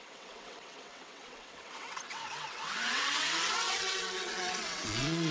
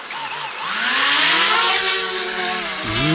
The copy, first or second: first